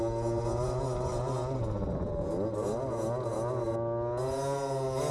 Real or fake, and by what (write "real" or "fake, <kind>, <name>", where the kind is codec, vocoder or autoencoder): real